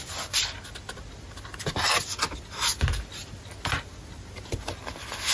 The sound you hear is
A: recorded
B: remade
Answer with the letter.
A